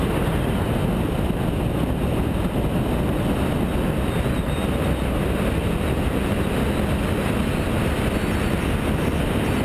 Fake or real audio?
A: real